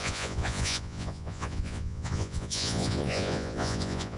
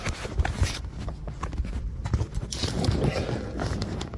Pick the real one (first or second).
second